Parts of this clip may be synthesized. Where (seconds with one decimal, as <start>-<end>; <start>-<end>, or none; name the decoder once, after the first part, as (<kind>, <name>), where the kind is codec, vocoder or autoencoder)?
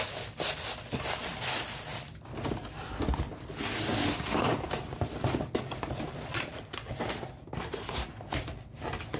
none